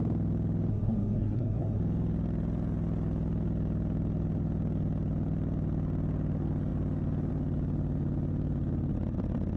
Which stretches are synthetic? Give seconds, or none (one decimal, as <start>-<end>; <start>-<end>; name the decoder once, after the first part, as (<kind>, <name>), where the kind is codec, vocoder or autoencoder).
0.7-1.8 (codec, SNAC)